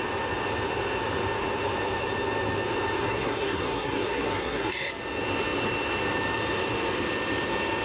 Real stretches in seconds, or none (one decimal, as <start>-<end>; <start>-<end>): 0.0-3.0; 4.9-7.8

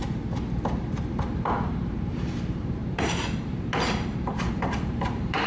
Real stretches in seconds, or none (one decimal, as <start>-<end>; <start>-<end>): 0.0-1.1

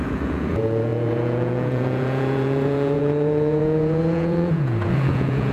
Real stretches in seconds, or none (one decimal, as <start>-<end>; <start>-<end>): none

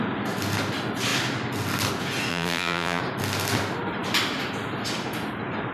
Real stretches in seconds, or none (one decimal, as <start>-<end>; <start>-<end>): 0.0-2.3; 3.0-5.7

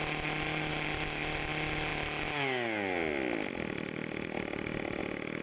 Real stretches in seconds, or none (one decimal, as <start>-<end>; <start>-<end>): 0.0-5.4